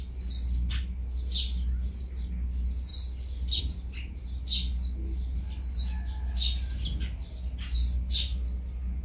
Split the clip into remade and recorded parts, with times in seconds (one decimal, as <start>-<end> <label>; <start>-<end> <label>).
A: 0.0-9.0 recorded

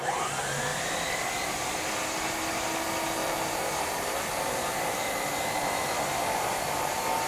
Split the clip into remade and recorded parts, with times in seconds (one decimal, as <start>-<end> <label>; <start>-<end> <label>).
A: 0.0-3.2 recorded; 3.2-7.3 remade

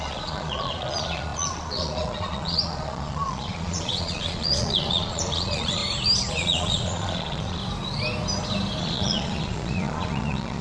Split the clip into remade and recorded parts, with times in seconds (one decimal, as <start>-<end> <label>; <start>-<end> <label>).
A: 0.0-5.8 remade; 5.8-6.3 recorded; 6.3-7.6 remade; 7.6-8.8 recorded; 8.8-10.6 remade

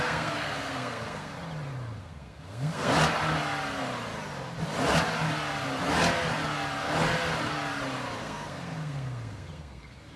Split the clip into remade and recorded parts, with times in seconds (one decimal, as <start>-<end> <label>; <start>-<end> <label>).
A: 0.0-1.3 remade; 1.3-2.0 recorded; 2.0-2.9 remade; 2.9-8.2 recorded; 8.2-10.2 remade

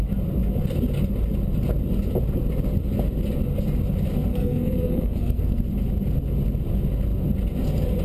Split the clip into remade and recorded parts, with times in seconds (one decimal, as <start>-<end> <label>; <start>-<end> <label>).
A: 0.0-4.3 recorded; 4.3-5.6 remade; 5.6-8.0 recorded

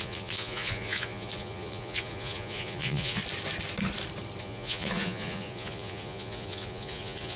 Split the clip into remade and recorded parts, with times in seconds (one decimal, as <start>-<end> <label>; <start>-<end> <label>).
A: 0.0-3.2 remade; 3.2-4.4 recorded; 4.4-7.4 remade

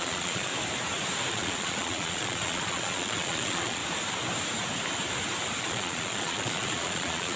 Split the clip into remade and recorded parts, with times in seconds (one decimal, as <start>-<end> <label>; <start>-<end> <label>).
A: 0.0-0.5 remade; 0.5-1.3 recorded; 1.3-3.8 remade; 3.8-5.6 recorded; 5.6-7.4 remade

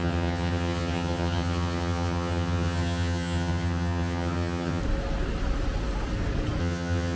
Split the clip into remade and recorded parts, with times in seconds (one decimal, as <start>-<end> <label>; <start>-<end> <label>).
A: 0.0-4.8 remade; 4.8-6.6 recorded; 6.6-7.2 remade